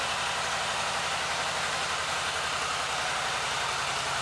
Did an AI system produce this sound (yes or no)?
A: yes